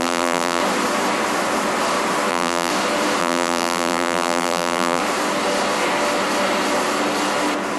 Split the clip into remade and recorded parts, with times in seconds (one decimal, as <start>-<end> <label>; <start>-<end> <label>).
0.0-0.6 remade; 0.6-2.3 recorded; 2.3-2.7 remade; 2.7-3.2 recorded; 3.2-5.0 remade; 5.0-7.8 recorded